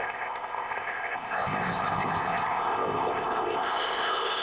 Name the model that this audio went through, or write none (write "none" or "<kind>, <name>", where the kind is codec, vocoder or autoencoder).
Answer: codec, ZipCodec